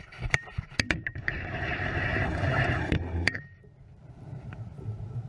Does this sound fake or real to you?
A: fake